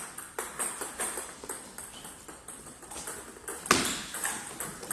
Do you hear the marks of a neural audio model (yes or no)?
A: no